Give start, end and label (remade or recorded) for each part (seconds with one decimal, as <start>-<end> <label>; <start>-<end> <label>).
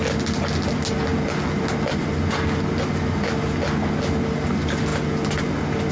0.0-5.9 recorded